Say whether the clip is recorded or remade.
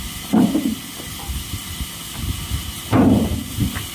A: recorded